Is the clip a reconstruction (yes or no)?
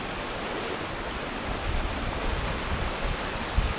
no